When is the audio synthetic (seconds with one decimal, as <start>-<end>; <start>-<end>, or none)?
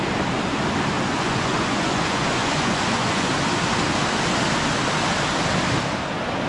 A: 1.1-3.3